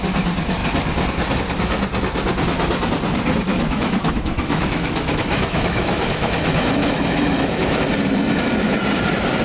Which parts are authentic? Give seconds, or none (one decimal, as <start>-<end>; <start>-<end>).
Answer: 0.0-3.5; 6.3-6.8; 7.8-9.4